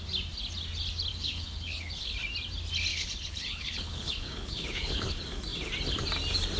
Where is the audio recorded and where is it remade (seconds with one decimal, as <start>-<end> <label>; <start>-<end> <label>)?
0.0-1.1 recorded; 1.1-2.1 remade; 2.1-2.9 recorded; 2.9-5.1 remade; 5.1-6.6 recorded